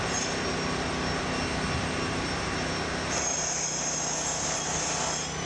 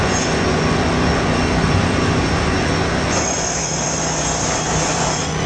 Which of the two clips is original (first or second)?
first